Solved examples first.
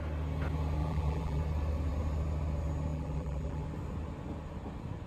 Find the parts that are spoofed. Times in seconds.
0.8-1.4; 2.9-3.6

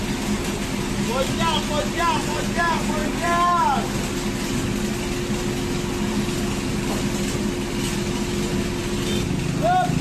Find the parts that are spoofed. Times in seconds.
none

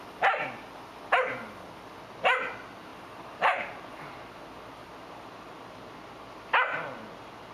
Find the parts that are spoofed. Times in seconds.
2.9-4.4

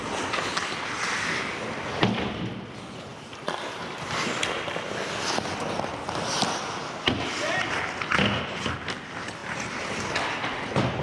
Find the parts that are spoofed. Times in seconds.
9.4-10.1

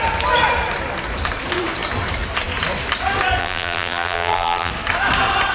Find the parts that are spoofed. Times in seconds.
3.4-4.7

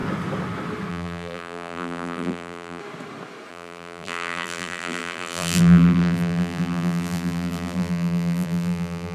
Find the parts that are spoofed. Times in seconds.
0.9-2.8; 3.5-9.1

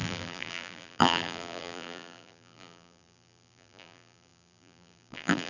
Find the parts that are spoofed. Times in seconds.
0.0-5.5